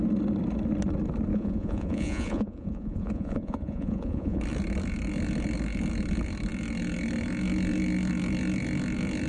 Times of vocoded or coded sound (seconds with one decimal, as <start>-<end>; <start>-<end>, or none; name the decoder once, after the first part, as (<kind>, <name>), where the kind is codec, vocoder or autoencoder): 1.3-4.4 (vocoder, Vocos)